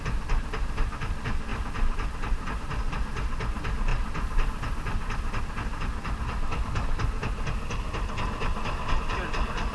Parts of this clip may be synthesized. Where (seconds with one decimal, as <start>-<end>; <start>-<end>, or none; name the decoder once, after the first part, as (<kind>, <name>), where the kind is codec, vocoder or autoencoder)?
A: none